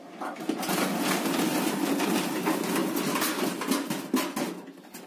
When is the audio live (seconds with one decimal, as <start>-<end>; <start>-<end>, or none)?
0.0-5.1